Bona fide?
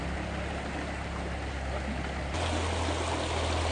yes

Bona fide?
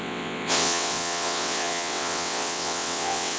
no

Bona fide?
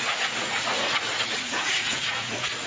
no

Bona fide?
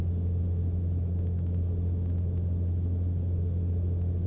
yes